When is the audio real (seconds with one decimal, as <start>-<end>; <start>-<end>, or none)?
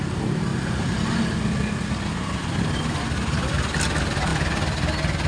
0.0-5.3